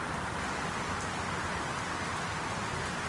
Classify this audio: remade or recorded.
recorded